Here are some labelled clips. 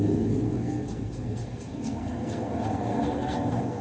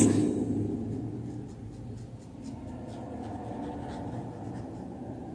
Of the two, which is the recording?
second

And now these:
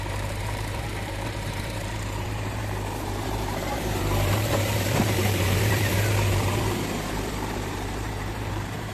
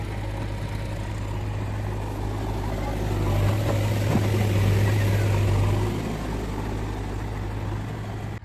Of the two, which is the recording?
second